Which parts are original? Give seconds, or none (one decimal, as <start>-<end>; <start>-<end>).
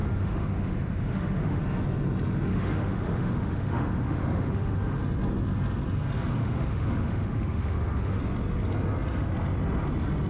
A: 1.6-2.5; 5.0-6.4; 8.2-10.3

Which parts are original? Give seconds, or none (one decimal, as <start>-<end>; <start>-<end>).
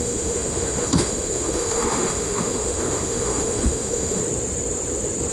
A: 4.2-5.3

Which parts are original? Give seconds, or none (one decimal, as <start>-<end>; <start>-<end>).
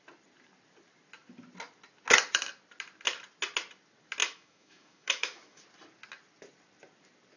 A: 0.0-4.2; 5.6-7.4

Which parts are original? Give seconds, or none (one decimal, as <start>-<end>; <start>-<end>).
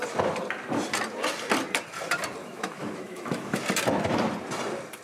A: 0.0-2.4; 3.6-5.0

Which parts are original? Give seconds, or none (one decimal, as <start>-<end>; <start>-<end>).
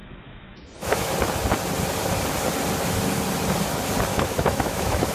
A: 1.1-4.1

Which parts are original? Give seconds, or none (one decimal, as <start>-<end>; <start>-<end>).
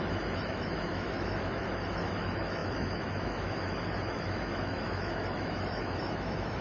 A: none